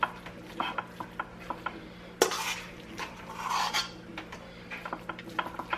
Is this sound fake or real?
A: real